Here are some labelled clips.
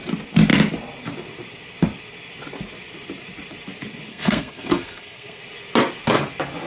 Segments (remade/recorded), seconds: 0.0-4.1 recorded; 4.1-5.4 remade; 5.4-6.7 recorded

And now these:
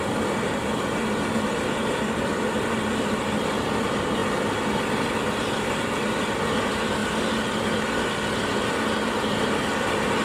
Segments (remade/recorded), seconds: 0.0-10.2 recorded